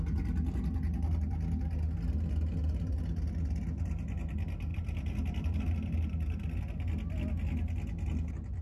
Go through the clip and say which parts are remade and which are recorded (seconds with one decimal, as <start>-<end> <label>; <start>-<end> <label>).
0.0-4.7 recorded; 4.7-5.6 remade; 5.6-8.6 recorded